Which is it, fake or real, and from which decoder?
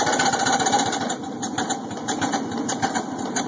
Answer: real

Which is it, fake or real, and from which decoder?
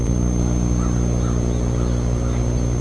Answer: real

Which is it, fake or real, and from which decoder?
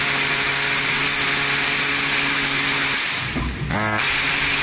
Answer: real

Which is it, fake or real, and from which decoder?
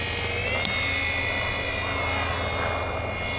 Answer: real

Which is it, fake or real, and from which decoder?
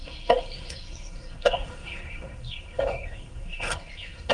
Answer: fake, codec, SNAC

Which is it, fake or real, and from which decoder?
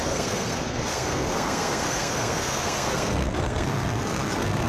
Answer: fake, codec, SNAC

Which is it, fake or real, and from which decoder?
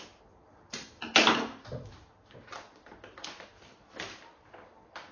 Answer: real